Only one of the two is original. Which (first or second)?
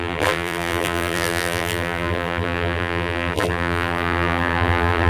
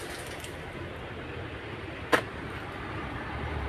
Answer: second